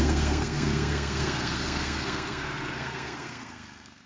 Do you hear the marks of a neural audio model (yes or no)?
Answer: yes